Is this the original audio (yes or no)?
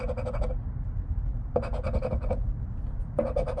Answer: yes